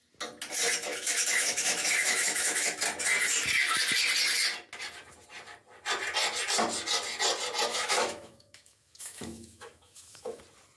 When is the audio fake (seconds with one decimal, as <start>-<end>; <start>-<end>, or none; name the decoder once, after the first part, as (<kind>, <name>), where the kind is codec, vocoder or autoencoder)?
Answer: 0.9-2.8 (autoencoder, DAC-VAE); 7.7-10.4